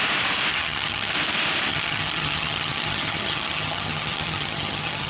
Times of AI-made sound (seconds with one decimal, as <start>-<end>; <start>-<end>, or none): 0.5-1.1; 1.7-5.1